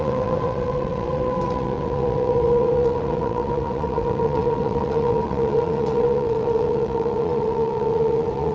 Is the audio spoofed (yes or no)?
yes